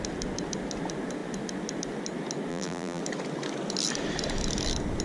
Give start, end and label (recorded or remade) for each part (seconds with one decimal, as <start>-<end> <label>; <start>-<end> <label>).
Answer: 0.0-2.5 recorded; 2.5-3.0 remade; 3.0-5.0 recorded